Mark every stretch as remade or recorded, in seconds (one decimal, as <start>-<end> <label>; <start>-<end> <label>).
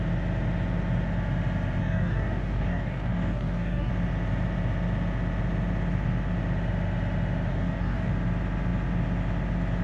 0.0-1.8 recorded; 1.8-3.9 remade; 3.9-7.5 recorded; 7.5-8.1 remade; 8.1-9.8 recorded